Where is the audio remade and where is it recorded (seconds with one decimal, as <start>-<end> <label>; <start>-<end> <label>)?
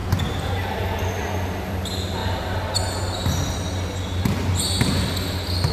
0.0-5.7 recorded